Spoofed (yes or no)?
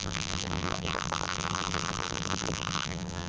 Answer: yes